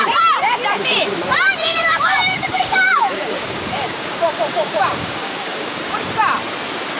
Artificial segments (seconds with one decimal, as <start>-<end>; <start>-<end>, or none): 1.7-5.9